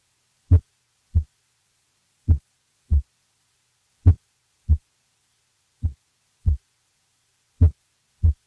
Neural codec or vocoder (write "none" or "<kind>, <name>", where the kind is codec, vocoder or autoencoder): vocoder, Vocos